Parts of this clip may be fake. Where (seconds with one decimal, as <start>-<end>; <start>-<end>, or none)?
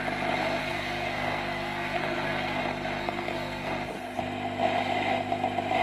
0.6-2.6; 3.0-3.7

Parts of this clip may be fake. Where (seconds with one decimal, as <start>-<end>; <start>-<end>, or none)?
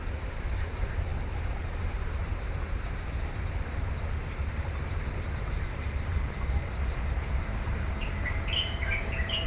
0.0-2.3; 5.4-9.5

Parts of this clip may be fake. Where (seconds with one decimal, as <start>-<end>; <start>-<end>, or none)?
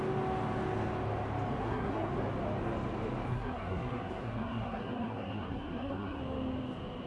1.6-2.1; 3.3-6.2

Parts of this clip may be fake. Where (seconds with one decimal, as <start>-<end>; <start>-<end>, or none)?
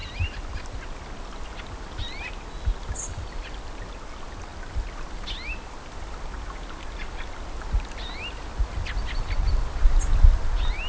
none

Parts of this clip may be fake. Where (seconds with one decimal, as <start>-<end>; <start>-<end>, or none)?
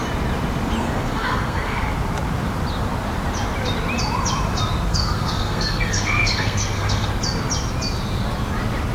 0.8-1.9; 4.9-7.1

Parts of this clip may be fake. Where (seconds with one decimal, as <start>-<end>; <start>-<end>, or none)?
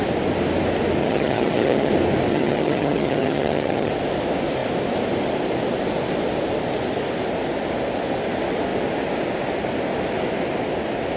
1.0-1.9; 2.3-3.9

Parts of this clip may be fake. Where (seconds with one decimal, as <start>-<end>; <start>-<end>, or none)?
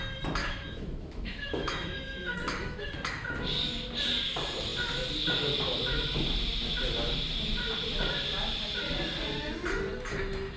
0.4-2.9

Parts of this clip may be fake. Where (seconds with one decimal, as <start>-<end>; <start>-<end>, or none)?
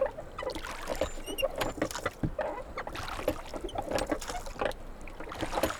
none